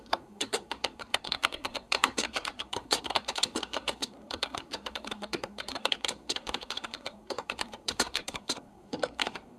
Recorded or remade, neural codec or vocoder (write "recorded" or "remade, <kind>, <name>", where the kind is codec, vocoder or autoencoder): remade, codec, SNAC